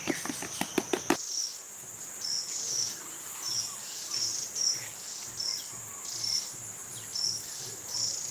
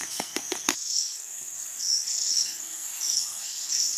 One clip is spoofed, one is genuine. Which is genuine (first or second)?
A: first